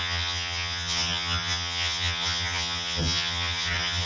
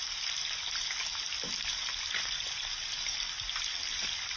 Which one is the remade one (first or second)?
first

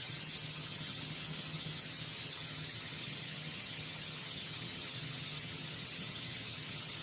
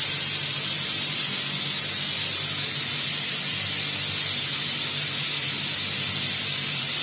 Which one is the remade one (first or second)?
first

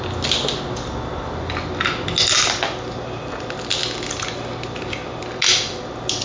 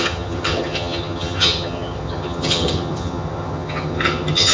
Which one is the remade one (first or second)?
second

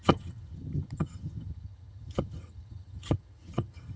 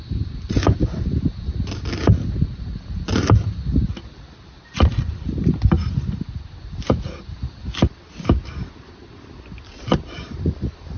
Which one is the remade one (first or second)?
first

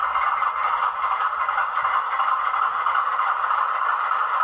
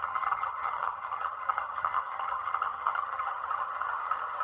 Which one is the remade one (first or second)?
second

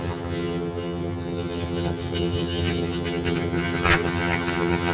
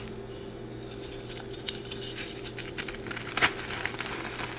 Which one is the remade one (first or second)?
first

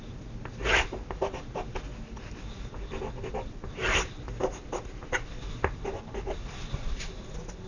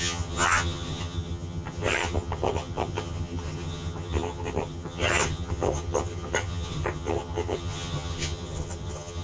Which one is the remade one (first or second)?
second